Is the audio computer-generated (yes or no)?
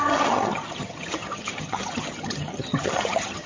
yes